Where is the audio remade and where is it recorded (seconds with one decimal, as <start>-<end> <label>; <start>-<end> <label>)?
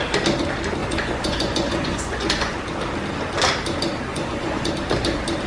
0.0-0.8 recorded; 0.8-2.6 remade; 2.6-4.1 recorded; 4.1-4.7 remade; 4.7-5.5 recorded